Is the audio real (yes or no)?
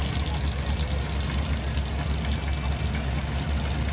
yes